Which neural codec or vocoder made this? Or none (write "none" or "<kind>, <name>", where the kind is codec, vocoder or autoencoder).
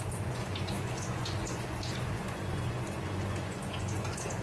vocoder, Vocos